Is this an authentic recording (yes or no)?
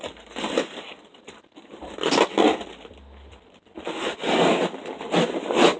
yes